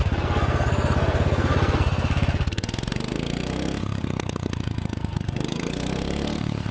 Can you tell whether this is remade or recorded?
remade